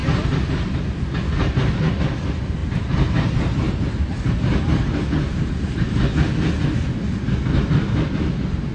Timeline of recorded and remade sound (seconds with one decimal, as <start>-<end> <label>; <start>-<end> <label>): 0.0-0.7 remade; 0.7-2.6 recorded; 2.6-6.0 remade; 6.0-8.7 recorded

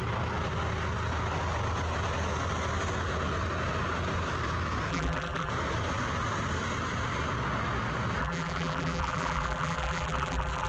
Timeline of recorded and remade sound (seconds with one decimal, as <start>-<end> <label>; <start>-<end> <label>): 0.0-4.9 recorded; 4.9-5.5 remade; 5.5-8.2 recorded; 8.2-10.7 remade

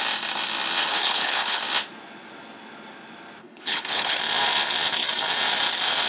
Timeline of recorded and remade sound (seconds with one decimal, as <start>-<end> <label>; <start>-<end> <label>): 0.0-0.9 recorded; 0.9-1.6 remade; 1.6-3.4 recorded; 3.4-4.2 remade; 4.2-6.1 recorded

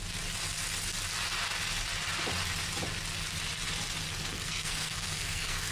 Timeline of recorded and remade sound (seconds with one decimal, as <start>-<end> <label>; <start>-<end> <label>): 0.0-4.1 recorded; 4.1-5.7 remade